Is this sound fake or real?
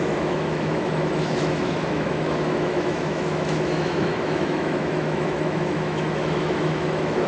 fake